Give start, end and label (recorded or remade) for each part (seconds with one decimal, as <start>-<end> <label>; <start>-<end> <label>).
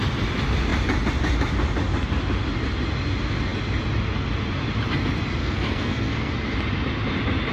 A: 0.0-5.4 recorded; 5.4-6.3 remade; 6.3-7.5 recorded